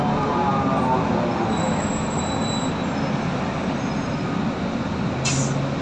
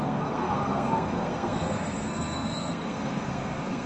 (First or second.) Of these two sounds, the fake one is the second